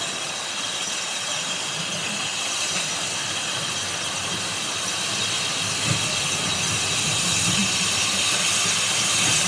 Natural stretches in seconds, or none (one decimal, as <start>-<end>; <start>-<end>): 0.0-2.3; 3.3-9.5